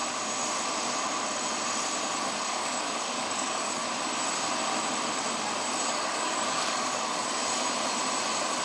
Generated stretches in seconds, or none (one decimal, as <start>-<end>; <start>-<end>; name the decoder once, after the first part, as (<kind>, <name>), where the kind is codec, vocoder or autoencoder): 2.3-3.8 (codec, DAC); 5.8-7.4